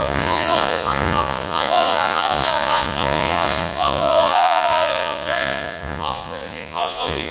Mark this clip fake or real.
fake